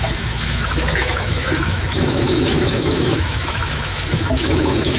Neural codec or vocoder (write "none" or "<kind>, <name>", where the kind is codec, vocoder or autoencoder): autoencoder, DAC-VAE